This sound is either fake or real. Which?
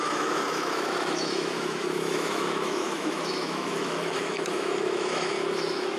fake